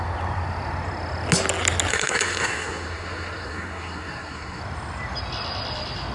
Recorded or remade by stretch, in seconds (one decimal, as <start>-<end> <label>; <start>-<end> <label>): 0.0-1.9 recorded; 1.9-4.6 remade; 4.6-6.1 recorded